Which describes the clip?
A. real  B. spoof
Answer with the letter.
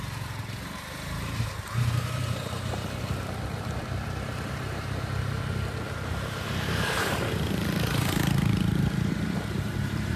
B